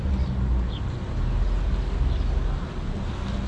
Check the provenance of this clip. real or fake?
real